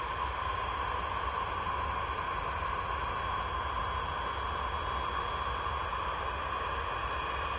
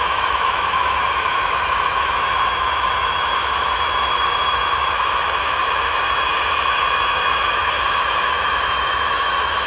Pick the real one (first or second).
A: first